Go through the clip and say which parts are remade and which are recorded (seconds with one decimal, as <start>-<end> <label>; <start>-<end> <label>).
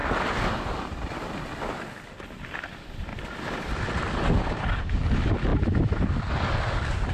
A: 0.0-3.1 recorded; 3.1-4.9 remade; 4.9-7.1 recorded